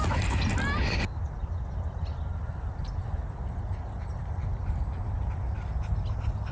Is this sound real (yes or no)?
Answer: yes